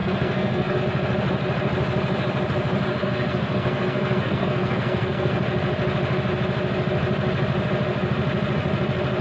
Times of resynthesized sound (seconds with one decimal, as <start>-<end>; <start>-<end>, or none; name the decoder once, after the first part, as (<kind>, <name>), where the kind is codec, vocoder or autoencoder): 0.0-0.8 (codec, SNAC); 3.0-5.4